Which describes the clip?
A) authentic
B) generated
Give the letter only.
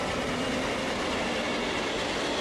A